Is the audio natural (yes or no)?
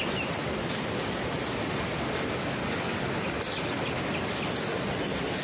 yes